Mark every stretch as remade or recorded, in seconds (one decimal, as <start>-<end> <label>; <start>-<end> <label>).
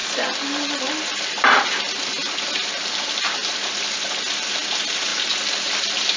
0.0-6.2 recorded